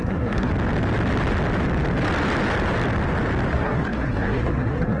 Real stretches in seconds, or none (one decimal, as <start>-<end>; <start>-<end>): 0.5-3.5